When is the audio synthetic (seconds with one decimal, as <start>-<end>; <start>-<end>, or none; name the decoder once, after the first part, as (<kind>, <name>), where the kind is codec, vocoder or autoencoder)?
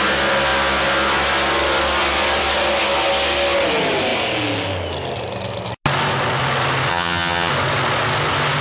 6.9-7.5 (vocoder, HiFi-GAN)